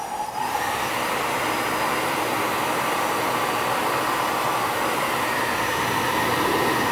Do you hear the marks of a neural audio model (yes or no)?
yes